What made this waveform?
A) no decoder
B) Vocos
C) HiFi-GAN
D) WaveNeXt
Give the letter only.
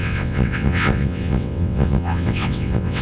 D